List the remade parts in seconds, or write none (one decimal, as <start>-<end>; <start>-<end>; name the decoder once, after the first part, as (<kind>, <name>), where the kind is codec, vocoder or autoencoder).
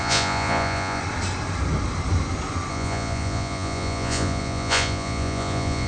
0.0-1.0 (vocoder, Vocos); 2.7-5.9